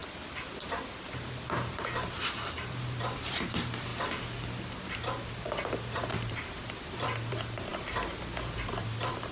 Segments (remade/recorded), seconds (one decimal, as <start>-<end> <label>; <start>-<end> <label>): 0.0-1.0 recorded; 1.0-3.9 remade; 3.9-5.4 recorded; 5.4-7.7 remade; 7.7-8.2 recorded; 8.2-9.3 remade